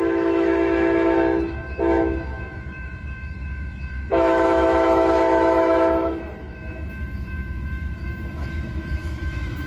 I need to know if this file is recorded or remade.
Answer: remade